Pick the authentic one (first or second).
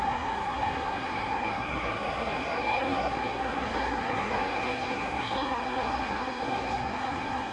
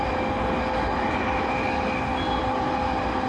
second